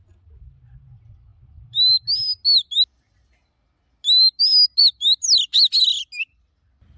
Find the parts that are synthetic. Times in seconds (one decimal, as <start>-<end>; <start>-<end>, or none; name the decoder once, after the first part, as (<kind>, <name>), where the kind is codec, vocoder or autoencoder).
none

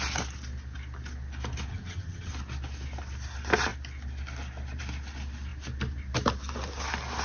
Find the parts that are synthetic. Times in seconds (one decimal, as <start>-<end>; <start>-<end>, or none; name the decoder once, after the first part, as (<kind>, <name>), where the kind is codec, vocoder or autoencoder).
1.7-2.3 (vocoder, HiFi-GAN)

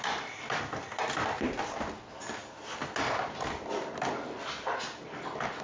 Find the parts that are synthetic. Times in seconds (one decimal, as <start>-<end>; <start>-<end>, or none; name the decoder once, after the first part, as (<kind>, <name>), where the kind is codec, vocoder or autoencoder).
none

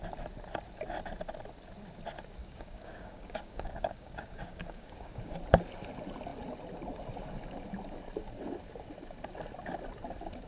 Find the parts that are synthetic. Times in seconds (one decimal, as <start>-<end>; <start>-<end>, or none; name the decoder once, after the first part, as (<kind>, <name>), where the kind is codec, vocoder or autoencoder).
2.4-5.3 (codec, DAC)

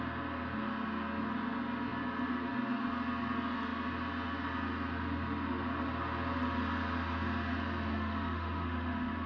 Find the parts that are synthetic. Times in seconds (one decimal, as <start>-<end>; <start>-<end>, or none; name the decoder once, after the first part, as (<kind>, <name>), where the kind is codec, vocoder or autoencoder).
7.9-9.3 (autoencoder, DAC-VAE)

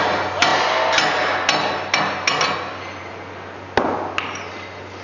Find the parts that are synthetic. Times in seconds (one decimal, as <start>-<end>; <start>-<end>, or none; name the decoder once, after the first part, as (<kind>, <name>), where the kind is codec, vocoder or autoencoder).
none